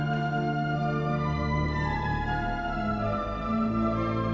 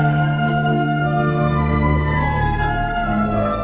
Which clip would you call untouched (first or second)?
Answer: first